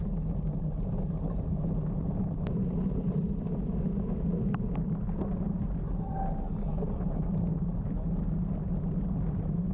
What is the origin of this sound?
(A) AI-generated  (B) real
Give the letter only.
B